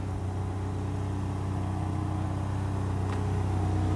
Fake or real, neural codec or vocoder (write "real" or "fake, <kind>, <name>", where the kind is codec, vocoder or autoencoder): real